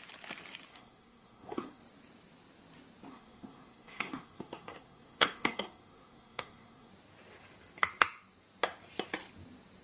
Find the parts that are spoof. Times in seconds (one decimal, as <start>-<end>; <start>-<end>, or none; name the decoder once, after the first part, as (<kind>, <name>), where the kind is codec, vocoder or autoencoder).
0.7-1.8 (codec, SNAC); 3.1-6.9